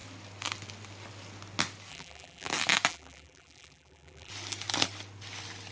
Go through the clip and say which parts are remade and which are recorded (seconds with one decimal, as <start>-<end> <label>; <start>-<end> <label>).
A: 0.0-1.9 recorded; 1.9-2.5 remade; 2.5-2.9 recorded; 2.9-4.3 remade; 4.3-5.7 recorded